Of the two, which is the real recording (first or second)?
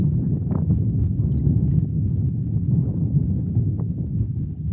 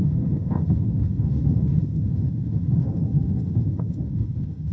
first